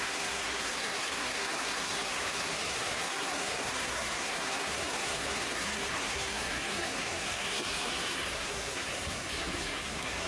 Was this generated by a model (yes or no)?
yes